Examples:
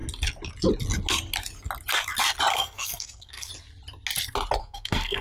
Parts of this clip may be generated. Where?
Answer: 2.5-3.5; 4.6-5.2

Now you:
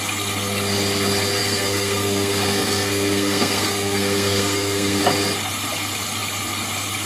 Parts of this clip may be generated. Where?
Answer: 1.4-5.0

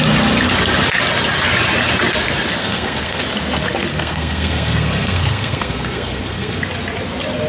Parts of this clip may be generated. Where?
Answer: 2.6-3.2; 3.9-6.6

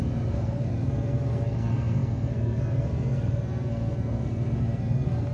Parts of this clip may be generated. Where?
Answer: 0.0-5.3

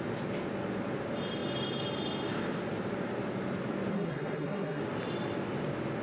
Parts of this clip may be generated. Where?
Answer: 3.9-4.8

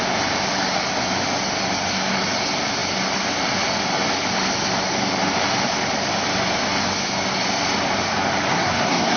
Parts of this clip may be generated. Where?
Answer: 8.5-9.2